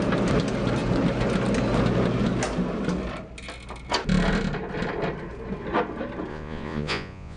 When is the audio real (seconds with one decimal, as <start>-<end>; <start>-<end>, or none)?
0.0-6.3